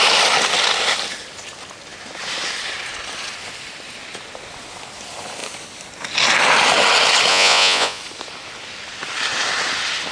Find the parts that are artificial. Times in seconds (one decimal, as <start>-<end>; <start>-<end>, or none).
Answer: 7.3-8.0